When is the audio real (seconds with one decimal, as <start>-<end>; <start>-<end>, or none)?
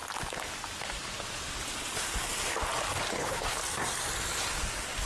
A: 0.0-3.1; 3.6-5.1